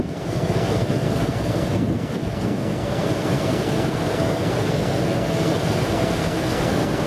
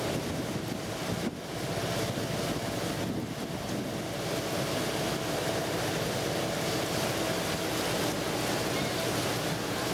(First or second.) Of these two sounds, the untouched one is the second